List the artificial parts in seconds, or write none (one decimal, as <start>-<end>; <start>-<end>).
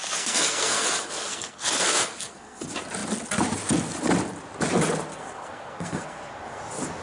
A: 0.0-2.6; 5.1-6.6